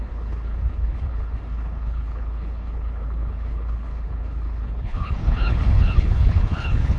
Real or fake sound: fake